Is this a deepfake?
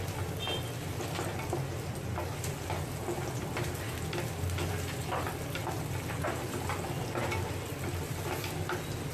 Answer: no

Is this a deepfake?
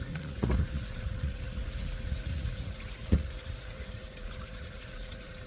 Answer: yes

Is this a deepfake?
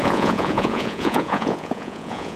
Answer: yes